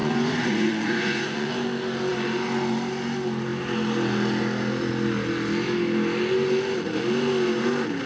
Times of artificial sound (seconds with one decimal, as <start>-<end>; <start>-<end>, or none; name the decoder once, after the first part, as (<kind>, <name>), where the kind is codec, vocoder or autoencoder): 0.0-1.5 (vocoder, Vocos)